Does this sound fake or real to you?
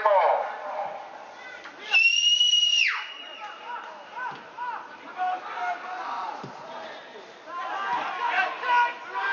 real